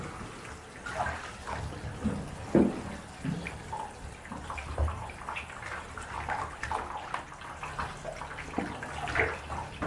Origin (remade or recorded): recorded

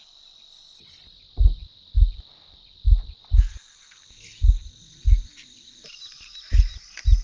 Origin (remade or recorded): recorded